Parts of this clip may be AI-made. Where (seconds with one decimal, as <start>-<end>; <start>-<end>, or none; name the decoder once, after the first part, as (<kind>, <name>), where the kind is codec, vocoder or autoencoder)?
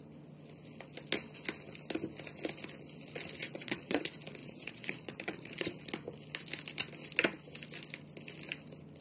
3.4-4.0 (vocoder, Vocos); 4.4-5.8